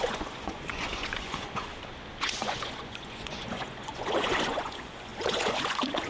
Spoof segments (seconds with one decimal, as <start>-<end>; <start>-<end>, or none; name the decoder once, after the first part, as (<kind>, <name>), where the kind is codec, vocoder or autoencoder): 0.0-1.7 (vocoder, Vocos); 2.2-6.1